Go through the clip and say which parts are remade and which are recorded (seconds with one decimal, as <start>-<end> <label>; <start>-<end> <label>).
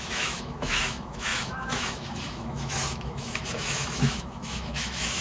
0.0-5.2 remade